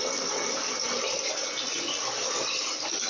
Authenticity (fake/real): real